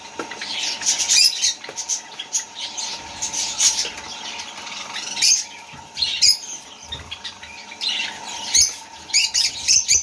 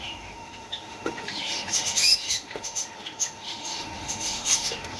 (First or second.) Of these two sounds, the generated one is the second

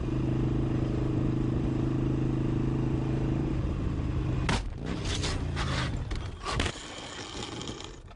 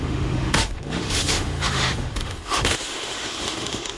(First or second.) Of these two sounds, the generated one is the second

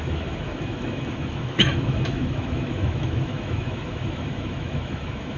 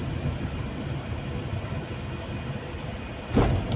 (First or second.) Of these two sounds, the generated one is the first